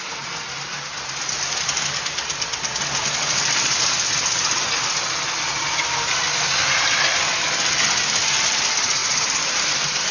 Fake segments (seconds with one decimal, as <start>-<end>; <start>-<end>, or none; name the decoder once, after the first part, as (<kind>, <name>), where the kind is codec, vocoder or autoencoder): 9.0-10.1 (vocoder, BigVGAN v2)